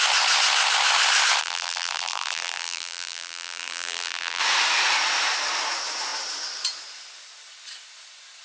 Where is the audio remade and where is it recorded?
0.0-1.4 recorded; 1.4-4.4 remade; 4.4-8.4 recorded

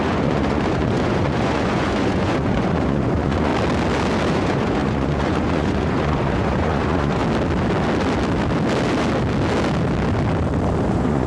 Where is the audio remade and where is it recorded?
0.0-3.5 remade; 3.5-4.3 recorded; 4.3-7.2 remade; 7.2-10.9 recorded; 10.9-11.3 remade